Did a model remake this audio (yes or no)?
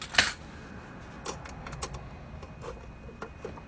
no